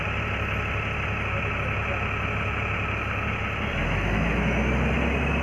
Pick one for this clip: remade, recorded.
recorded